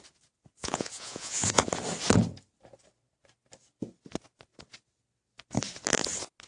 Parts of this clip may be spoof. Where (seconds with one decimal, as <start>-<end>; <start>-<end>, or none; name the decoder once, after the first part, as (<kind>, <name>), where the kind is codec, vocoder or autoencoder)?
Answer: 0.6-1.7 (vocoder, Vocos)